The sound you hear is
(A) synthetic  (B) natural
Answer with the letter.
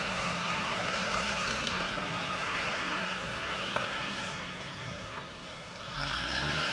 A